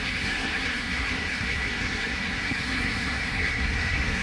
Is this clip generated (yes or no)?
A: yes